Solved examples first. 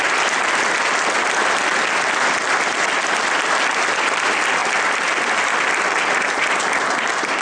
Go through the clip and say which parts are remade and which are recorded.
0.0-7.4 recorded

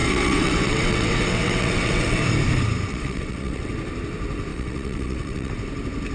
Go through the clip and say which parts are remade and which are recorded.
0.0-2.2 remade; 2.2-2.9 recorded; 2.9-3.7 remade; 3.7-4.5 recorded; 4.5-5.5 remade; 5.5-6.1 recorded

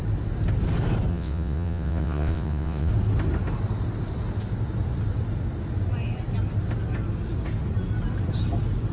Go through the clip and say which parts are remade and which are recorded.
0.0-1.1 recorded; 1.1-2.9 remade; 2.9-8.9 recorded